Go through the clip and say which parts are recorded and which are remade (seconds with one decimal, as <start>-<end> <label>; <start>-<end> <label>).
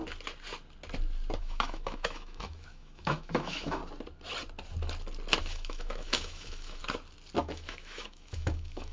0.0-1.4 recorded; 1.4-3.8 remade; 3.8-5.4 recorded; 5.4-6.8 remade; 6.8-7.4 recorded; 7.4-8.9 remade